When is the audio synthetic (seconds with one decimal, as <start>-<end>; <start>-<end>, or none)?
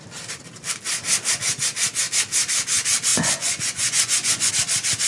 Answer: 3.1-4.5